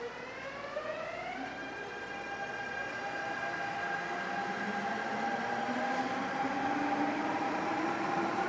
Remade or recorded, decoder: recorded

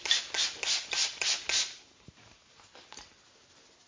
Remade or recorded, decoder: recorded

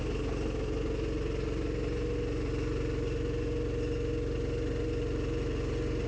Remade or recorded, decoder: recorded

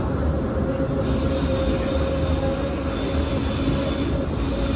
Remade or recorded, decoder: recorded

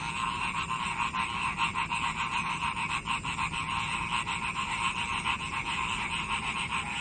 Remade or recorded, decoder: recorded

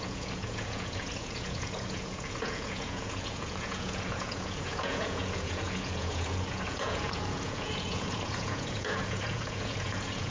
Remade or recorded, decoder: remade, vocoder, Vocos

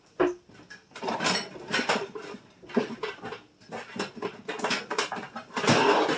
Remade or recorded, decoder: recorded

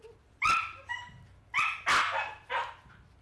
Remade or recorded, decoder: recorded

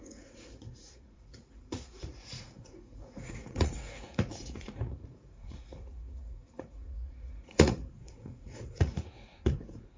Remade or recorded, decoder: remade, vocoder, Vocos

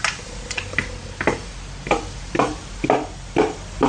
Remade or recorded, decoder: recorded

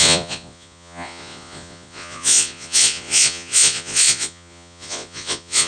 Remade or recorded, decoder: remade, vocoder, Vocos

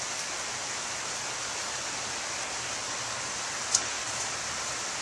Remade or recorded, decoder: recorded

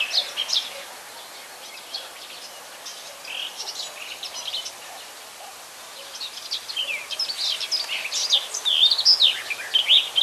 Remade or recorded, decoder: recorded